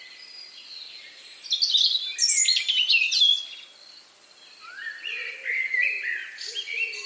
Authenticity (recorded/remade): recorded